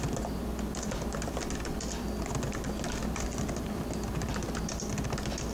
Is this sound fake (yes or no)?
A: no